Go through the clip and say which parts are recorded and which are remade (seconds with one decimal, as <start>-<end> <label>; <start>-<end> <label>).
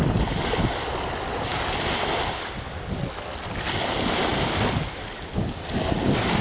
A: 0.0-6.4 recorded